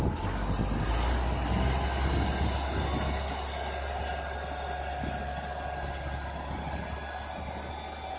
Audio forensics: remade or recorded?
recorded